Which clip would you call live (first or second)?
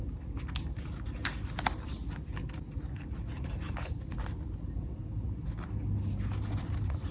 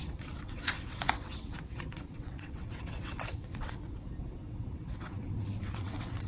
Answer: first